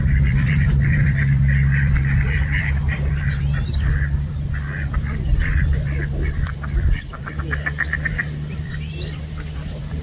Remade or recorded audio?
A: remade